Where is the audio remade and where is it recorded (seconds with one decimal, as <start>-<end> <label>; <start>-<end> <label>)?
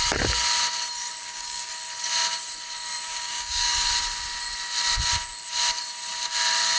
0.0-1.2 recorded; 1.2-1.7 remade; 1.7-3.1 recorded; 3.1-3.9 remade; 3.9-6.8 recorded